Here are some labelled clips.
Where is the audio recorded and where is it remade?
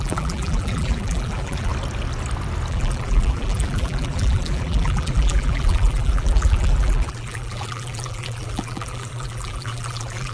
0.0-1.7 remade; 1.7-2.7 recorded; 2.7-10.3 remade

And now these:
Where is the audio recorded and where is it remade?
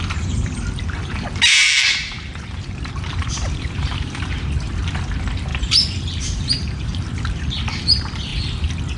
0.0-1.6 recorded; 1.6-4.5 remade; 4.5-5.5 recorded; 5.5-7.6 remade; 7.6-9.0 recorded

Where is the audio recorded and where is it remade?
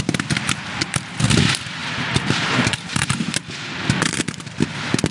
0.0-5.1 remade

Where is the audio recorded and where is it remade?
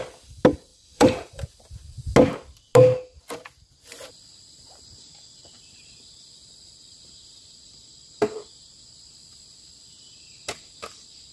0.0-0.7 recorded; 0.7-1.4 remade; 1.4-11.3 recorded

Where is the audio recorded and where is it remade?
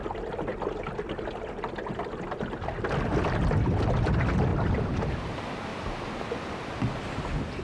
0.0-0.5 recorded; 0.5-2.4 remade; 2.4-4.5 recorded; 4.5-5.1 remade; 5.1-5.7 recorded; 5.7-7.6 remade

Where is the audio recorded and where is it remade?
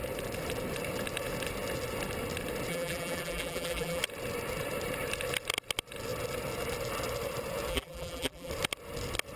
0.0-2.7 recorded; 2.7-4.0 remade; 4.0-7.7 recorded; 7.7-8.5 remade; 8.5-9.4 recorded